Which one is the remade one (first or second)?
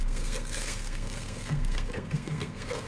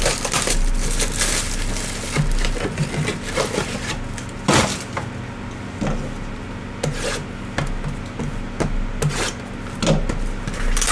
first